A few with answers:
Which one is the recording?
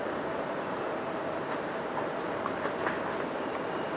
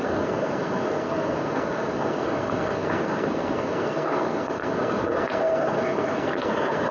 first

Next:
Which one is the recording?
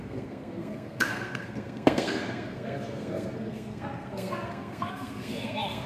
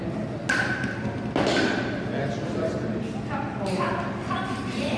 second